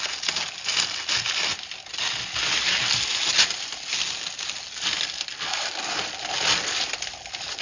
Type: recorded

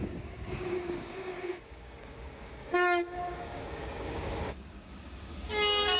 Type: remade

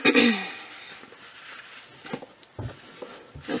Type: recorded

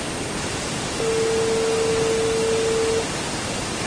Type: recorded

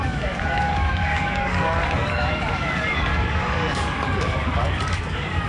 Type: remade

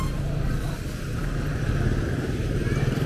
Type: recorded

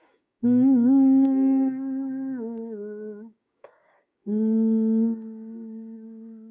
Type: remade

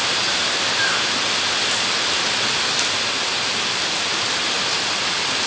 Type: recorded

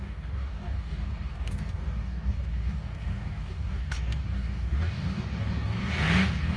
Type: remade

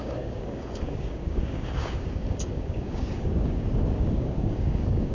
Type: remade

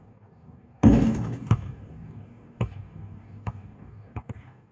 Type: remade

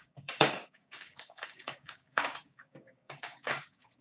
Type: remade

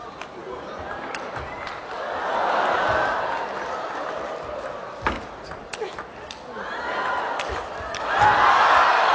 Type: recorded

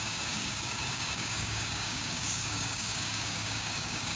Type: remade